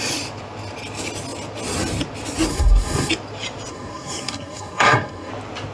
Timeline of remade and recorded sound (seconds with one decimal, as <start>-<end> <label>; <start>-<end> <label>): 0.0-2.5 recorded; 2.5-3.1 remade; 3.1-3.7 recorded; 3.7-5.3 remade; 5.3-5.7 recorded